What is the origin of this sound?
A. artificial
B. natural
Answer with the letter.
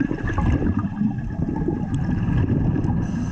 B